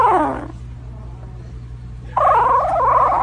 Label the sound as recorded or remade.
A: recorded